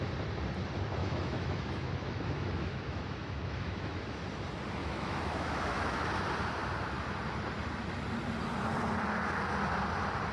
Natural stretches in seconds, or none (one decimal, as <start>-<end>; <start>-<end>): 0.0-1.0; 4.2-4.8; 6.1-10.3